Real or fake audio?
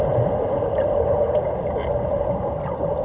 real